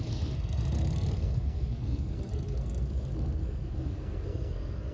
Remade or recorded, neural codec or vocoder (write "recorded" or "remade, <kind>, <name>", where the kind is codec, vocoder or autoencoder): remade, codec, SNAC